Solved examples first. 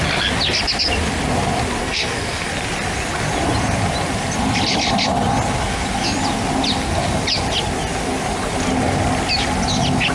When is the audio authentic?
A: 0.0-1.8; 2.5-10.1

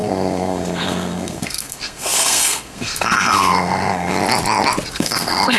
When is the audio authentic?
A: 4.1-4.9